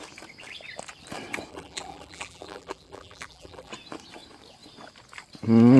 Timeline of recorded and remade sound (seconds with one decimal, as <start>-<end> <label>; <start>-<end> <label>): 0.0-1.5 recorded; 1.5-3.7 remade; 3.7-5.8 recorded